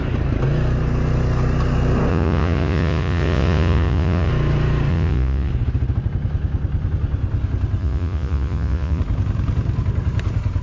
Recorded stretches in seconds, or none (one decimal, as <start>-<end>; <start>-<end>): 0.0-2.1; 4.3-4.9; 5.5-7.8; 9.0-10.6